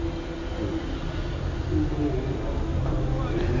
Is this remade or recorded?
recorded